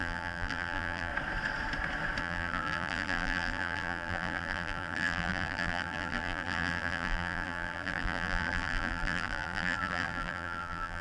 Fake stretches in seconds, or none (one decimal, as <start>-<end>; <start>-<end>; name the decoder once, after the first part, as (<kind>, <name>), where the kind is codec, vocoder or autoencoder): 0.0-1.1 (vocoder, BigVGAN v2); 2.2-11.0